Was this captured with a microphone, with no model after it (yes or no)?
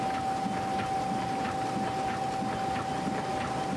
yes